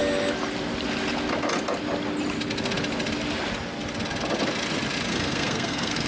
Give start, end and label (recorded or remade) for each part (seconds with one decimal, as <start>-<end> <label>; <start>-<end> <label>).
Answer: 0.0-5.1 recorded; 5.1-6.1 remade